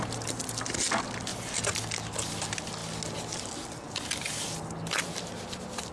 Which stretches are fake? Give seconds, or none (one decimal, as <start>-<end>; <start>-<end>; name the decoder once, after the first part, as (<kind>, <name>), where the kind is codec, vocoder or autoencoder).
none